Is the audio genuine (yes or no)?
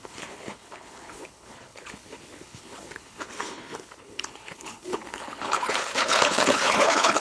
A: no